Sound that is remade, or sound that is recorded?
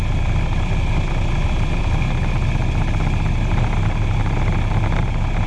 recorded